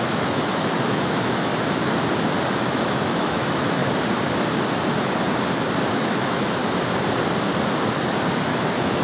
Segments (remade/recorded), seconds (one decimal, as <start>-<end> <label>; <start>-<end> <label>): 0.0-1.5 remade; 1.5-2.5 recorded; 2.5-3.8 remade; 3.8-5.9 recorded; 5.9-6.6 remade; 6.6-8.5 recorded; 8.5-9.0 remade